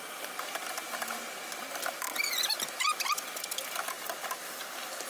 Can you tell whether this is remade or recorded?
recorded